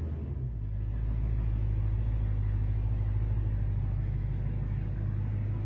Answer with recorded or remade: recorded